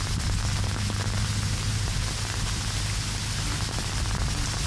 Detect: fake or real real